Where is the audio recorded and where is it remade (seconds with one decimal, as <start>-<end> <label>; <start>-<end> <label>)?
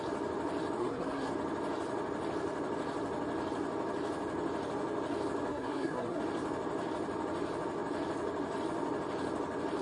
0.0-0.8 recorded; 0.8-1.3 remade; 1.3-5.5 recorded; 5.5-6.2 remade; 6.2-9.8 recorded